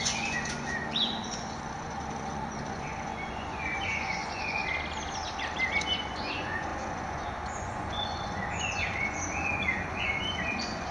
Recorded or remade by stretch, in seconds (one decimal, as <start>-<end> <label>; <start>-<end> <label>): 0.0-4.6 remade; 4.6-5.7 recorded; 5.7-10.9 remade